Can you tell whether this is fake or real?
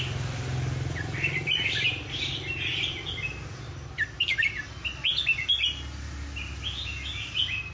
real